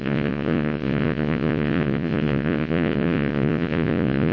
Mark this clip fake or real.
fake